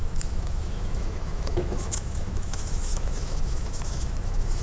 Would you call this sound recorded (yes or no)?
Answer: no